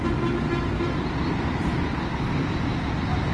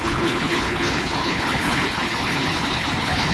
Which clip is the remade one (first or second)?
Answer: second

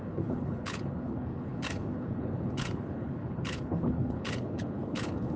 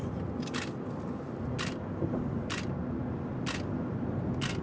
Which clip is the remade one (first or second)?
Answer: first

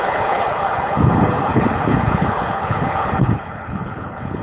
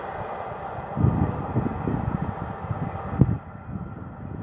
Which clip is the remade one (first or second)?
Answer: first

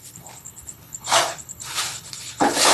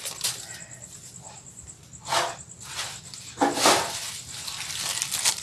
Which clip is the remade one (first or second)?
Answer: first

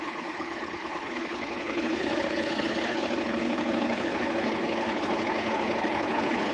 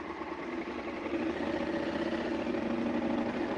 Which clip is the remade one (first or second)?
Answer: first